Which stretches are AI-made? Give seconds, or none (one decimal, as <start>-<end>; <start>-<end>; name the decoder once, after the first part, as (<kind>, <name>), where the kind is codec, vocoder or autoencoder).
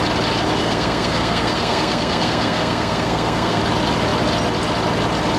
0.6-3.6 (codec, SNAC)